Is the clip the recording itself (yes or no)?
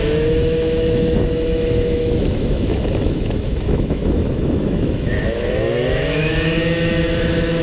no